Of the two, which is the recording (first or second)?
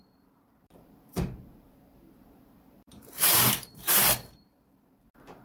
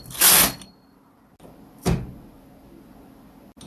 second